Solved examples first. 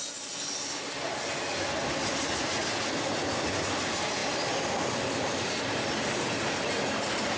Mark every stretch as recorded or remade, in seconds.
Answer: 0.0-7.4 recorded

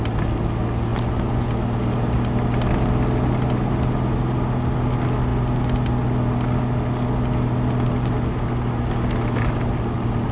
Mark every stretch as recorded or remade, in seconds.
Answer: 0.0-0.9 recorded; 0.9-1.5 remade; 1.5-10.3 recorded

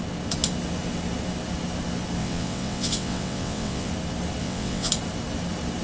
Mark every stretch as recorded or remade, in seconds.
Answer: 0.0-2.2 recorded; 2.2-3.9 remade; 3.9-4.4 recorded; 4.4-4.9 remade; 4.9-5.8 recorded

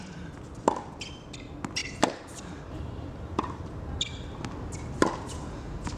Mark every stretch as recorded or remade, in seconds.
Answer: 0.0-1.8 recorded; 1.8-3.7 remade; 3.7-6.0 recorded

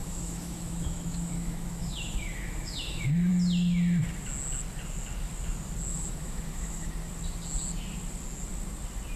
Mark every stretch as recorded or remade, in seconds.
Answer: 0.0-3.3 remade; 3.3-5.9 recorded; 5.9-6.9 remade; 6.9-9.2 recorded

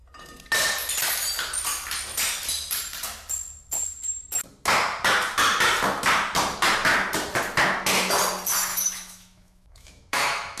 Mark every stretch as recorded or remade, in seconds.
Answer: 0.0-8.7 recorded; 8.7-10.6 remade

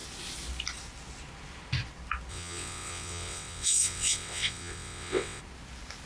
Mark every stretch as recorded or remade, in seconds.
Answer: 0.0-2.3 recorded; 2.3-5.4 remade; 5.4-6.1 recorded

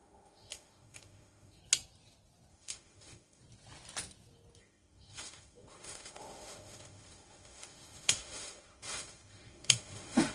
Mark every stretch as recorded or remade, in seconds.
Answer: 0.0-1.6 remade; 1.6-2.5 recorded; 2.5-3.4 remade; 3.4-4.6 recorded; 4.6-10.3 remade